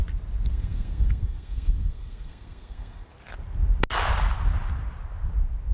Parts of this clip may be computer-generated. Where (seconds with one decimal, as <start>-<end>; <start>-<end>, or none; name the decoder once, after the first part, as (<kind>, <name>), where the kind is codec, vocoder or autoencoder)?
0.5-3.1 (codec, SNAC)